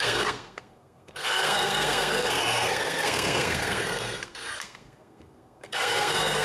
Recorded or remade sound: remade